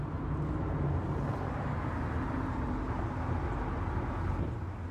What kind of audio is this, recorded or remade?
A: recorded